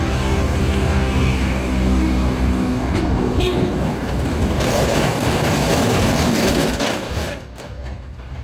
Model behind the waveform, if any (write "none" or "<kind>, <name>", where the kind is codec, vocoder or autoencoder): codec, DAC